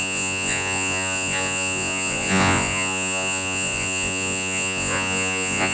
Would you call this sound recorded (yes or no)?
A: no